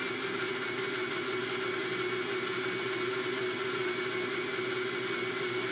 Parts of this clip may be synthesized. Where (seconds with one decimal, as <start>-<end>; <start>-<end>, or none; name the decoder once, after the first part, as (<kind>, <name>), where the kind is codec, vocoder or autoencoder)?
none